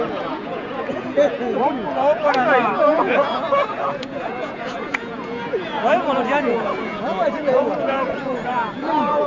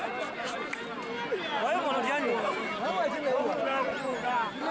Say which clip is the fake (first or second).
first